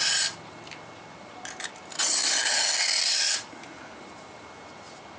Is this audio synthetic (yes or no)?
no